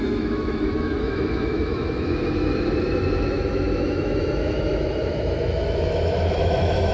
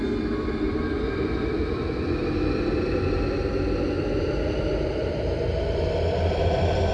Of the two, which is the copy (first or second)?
first